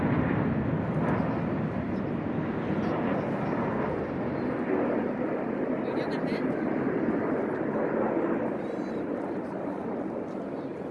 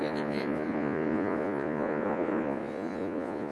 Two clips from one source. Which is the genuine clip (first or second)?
first